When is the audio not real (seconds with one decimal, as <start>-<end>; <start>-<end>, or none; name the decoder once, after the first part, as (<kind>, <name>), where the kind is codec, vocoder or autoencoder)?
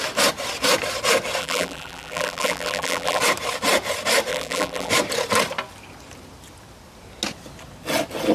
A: 1.4-3.2 (vocoder, BigVGAN v2); 4.3-4.9